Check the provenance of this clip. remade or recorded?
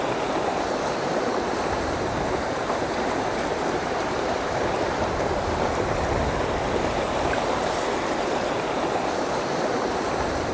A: remade